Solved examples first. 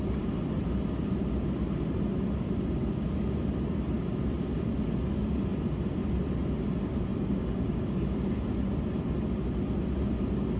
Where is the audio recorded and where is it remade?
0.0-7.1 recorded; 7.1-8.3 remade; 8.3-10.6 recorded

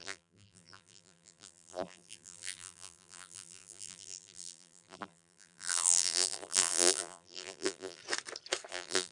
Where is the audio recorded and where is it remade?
0.0-8.0 remade; 8.0-8.7 recorded; 8.7-9.1 remade

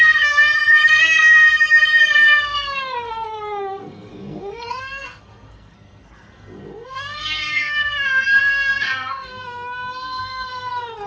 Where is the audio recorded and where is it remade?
0.0-11.1 remade

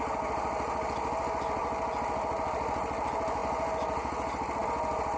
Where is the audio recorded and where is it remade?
0.0-5.2 recorded

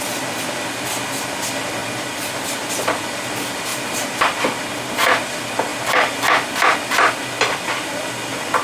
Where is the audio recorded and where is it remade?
0.0-3.7 recorded; 3.7-4.4 remade; 4.4-5.7 recorded; 5.7-6.3 remade; 6.3-8.6 recorded

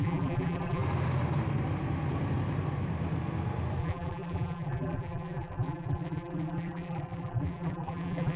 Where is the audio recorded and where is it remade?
0.0-0.8 remade; 0.8-3.8 recorded; 3.8-8.4 remade